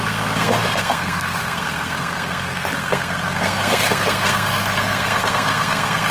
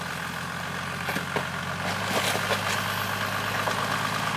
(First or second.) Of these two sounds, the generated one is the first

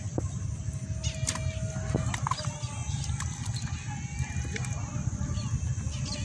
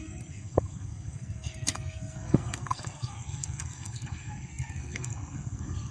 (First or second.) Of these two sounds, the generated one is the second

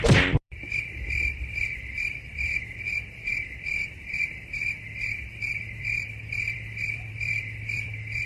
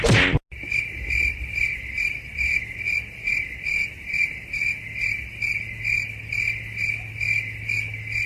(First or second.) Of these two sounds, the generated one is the first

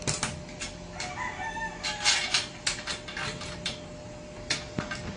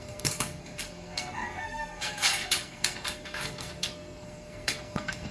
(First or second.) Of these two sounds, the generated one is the second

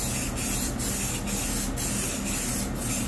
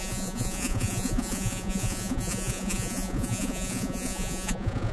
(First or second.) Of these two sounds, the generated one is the second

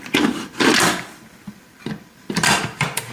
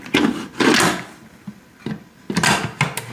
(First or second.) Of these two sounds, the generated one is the first